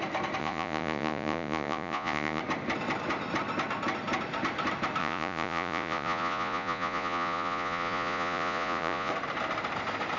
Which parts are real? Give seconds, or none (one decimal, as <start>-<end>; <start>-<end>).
0.0-0.4; 2.4-5.0; 9.1-10.2